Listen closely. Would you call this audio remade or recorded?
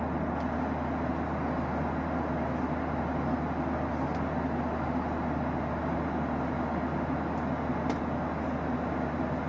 recorded